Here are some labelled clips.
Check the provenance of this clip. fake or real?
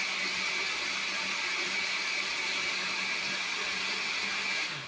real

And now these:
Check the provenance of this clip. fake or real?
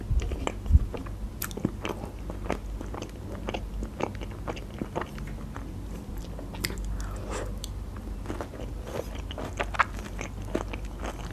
real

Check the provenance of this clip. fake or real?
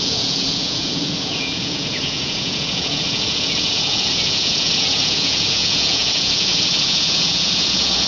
fake